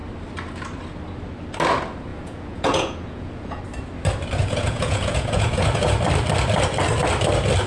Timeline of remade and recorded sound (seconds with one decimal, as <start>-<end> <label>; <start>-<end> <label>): 0.0-2.1 recorded; 2.1-3.6 remade; 3.6-4.4 recorded; 4.4-5.9 remade; 5.9-7.7 recorded